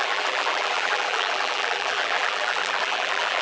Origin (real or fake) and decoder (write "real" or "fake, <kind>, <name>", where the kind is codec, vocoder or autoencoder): fake, vocoder, BigVGAN v2